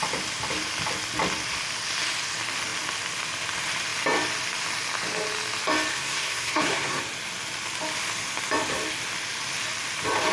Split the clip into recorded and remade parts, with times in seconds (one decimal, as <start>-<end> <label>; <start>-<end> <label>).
0.0-5.9 recorded; 5.9-7.0 remade; 7.0-10.3 recorded

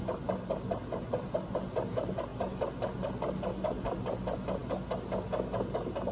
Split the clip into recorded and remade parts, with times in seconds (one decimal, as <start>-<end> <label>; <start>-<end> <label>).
0.0-6.1 recorded

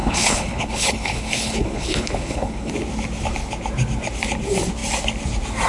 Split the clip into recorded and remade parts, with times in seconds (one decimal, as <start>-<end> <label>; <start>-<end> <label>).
0.0-2.7 remade; 2.7-5.7 recorded

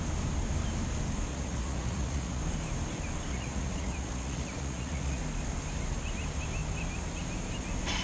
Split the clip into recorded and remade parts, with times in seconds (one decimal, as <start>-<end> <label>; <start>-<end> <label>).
0.0-1.3 recorded; 1.3-2.4 remade; 2.4-3.3 recorded; 3.3-5.2 remade; 5.2-8.0 recorded

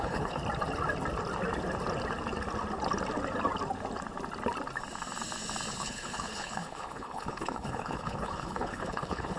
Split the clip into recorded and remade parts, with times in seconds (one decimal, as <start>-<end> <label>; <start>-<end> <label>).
0.0-0.4 remade; 0.4-5.7 recorded; 5.7-9.4 remade